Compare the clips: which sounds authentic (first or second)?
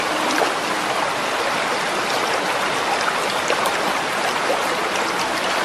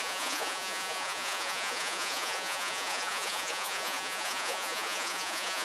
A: first